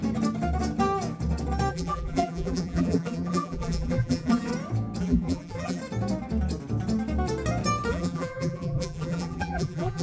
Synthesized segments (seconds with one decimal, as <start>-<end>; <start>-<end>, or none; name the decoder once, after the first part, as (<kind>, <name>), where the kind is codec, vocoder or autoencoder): 1.7-4.5 (vocoder, BigVGAN v2); 5.0-5.8; 7.9-10.0